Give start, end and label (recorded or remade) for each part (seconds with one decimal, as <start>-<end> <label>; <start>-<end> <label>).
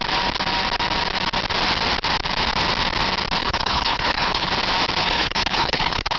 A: 0.0-3.4 recorded; 3.4-4.5 remade; 4.5-5.0 recorded; 5.0-6.2 remade